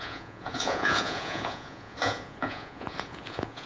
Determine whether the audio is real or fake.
fake